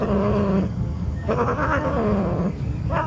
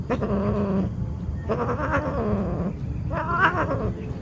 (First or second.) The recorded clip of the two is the second